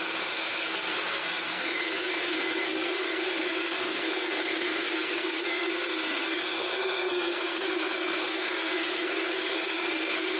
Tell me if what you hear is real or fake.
fake